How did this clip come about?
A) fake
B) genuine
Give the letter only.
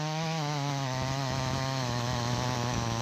A